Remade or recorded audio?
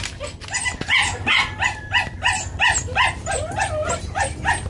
recorded